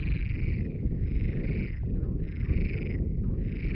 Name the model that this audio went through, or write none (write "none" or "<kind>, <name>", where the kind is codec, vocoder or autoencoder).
none